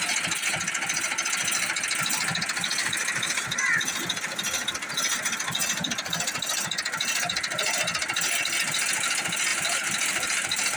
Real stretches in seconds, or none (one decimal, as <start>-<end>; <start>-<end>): 0.0-9.5